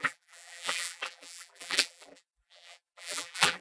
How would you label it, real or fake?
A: fake